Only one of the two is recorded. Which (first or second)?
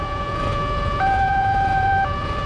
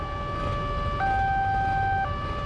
second